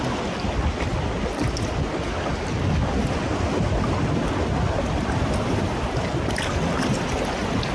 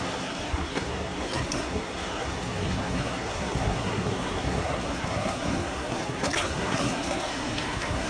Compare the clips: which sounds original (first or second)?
first